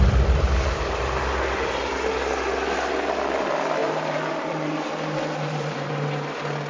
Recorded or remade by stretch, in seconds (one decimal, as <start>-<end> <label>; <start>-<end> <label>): 0.0-3.8 recorded; 3.8-5.9 remade; 5.9-6.7 recorded